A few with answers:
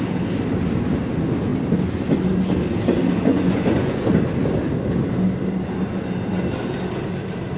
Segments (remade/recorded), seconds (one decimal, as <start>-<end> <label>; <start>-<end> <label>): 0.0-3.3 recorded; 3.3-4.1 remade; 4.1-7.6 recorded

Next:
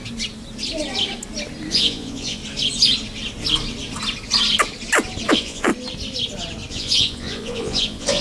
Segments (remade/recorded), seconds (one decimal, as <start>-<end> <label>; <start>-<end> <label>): 0.0-1.7 recorded; 1.7-2.4 remade; 2.4-5.3 recorded; 5.3-5.7 remade; 5.7-6.7 recorded; 6.7-8.2 remade

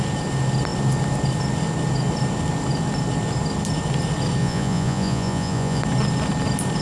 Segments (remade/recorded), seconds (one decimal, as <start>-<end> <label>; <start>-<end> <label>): 0.0-4.4 recorded; 4.4-5.8 remade; 5.8-6.8 recorded